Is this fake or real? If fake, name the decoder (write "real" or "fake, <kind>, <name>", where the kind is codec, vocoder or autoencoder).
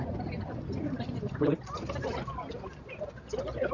real